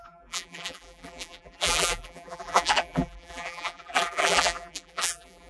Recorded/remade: remade